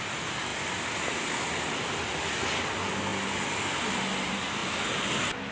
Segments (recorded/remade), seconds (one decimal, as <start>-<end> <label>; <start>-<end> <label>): 0.0-5.5 recorded